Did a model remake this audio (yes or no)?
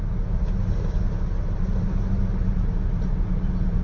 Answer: no